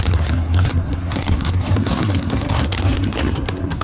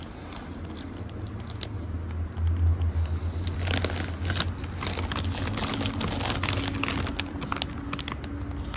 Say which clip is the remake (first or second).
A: first